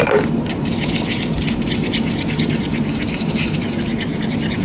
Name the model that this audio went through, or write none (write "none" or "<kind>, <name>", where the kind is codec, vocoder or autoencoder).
none